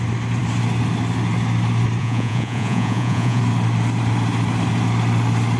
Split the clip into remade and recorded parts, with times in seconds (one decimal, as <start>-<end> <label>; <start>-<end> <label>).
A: 0.0-2.0 recorded; 2.0-3.4 remade; 3.4-5.6 recorded